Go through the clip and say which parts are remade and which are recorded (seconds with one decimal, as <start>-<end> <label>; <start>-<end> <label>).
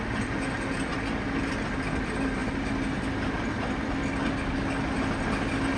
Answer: 0.0-5.8 recorded